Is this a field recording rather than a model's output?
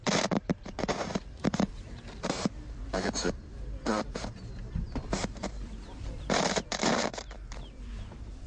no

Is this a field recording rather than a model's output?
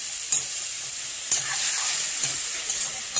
yes